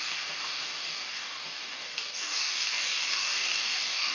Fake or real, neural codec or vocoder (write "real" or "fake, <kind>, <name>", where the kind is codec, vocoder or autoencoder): fake, codec, DAC